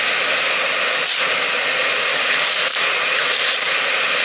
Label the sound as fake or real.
real